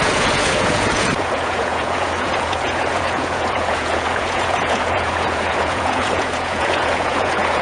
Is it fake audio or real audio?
fake